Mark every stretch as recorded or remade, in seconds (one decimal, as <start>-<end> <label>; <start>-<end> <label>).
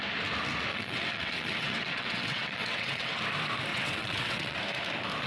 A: 0.0-0.7 recorded; 0.7-3.2 remade; 3.2-3.7 recorded; 3.7-4.6 remade; 4.6-5.3 recorded